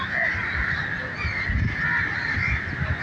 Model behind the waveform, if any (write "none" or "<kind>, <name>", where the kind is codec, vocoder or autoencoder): none